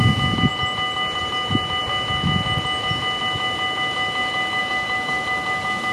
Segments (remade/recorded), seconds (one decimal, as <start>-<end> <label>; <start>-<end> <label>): 0.0-5.9 recorded